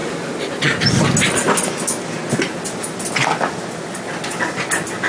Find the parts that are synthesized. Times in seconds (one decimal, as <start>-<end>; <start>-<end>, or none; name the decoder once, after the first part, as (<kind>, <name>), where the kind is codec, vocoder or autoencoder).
none